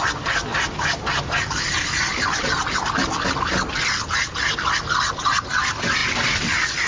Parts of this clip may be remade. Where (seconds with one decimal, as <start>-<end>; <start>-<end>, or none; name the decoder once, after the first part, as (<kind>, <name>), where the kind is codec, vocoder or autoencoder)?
none